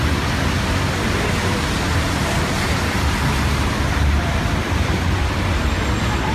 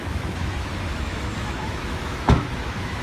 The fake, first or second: second